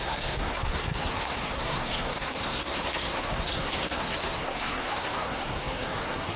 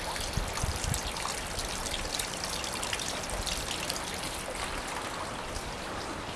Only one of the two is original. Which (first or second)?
second